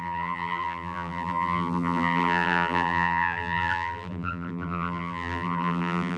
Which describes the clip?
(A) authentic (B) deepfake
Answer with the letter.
B